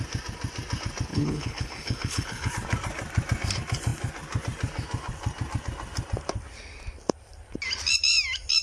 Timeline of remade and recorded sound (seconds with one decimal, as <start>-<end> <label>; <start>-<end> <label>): 0.0-1.1 recorded; 1.1-2.5 remade; 2.5-8.6 recorded